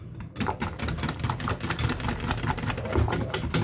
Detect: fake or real real